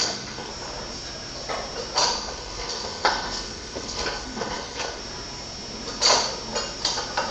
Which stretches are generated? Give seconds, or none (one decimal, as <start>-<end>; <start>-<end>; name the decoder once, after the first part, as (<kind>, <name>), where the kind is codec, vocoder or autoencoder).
0.0-0.5 (codec, SNAC); 2.1-5.0